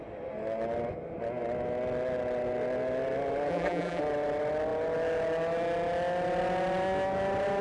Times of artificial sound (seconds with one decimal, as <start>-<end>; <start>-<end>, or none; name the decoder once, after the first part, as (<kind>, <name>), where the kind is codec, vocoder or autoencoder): 3.5-4.0 (vocoder, BigVGAN v2)